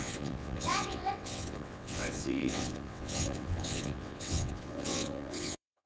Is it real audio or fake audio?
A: fake